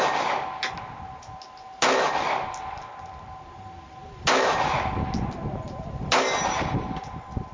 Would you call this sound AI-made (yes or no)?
no